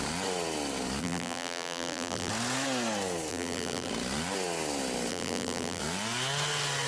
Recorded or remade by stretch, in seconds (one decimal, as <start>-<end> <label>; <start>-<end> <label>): 0.0-1.0 recorded; 1.0-2.3 remade; 2.3-3.3 recorded; 3.3-3.9 remade; 3.9-5.1 recorded; 5.1-5.8 remade; 5.8-6.9 recorded